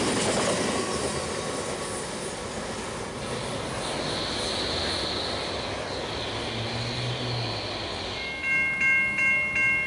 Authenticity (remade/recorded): recorded